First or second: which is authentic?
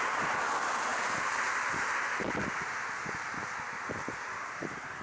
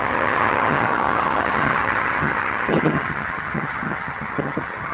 first